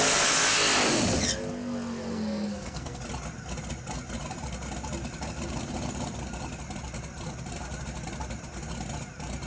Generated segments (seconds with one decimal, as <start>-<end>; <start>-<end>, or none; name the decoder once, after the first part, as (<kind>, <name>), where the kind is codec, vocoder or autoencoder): 2.1-3.0 (codec, SNAC)